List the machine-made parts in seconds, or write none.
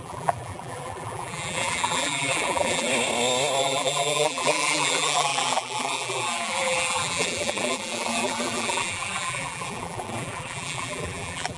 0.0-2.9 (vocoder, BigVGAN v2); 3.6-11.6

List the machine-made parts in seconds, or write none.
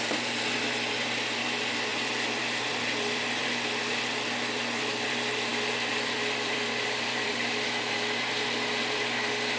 0.0-9.6 (vocoder, BigVGAN v2)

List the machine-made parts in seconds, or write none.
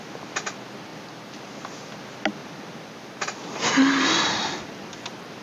0.9-2.0 (vocoder, BigVGAN v2); 2.4-5.4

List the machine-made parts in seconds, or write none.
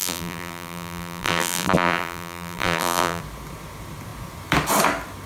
0.0-3.2 (vocoder, BigVGAN v2)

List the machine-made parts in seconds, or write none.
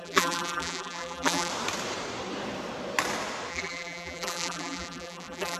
0.0-1.5 (vocoder, BigVGAN v2); 3.5-5.6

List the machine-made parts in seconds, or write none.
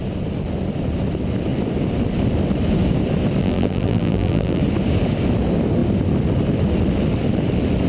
3.4-4.6 (vocoder, BigVGAN v2)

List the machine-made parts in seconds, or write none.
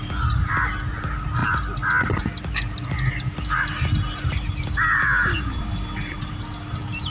1.4-2.2 (vocoder, BigVGAN v2)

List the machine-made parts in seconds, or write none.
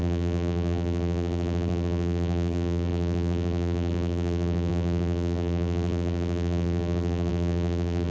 0.0-8.1 (vocoder, BigVGAN v2)